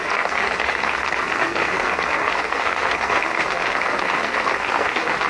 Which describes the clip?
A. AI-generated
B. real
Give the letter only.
A